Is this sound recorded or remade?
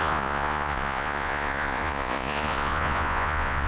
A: remade